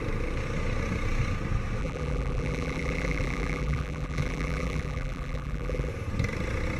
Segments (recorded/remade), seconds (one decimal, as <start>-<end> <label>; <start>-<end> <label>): 0.0-1.8 recorded; 1.8-5.9 remade; 5.9-6.8 recorded